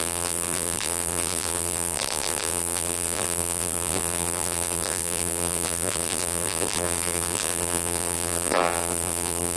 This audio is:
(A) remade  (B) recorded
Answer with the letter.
A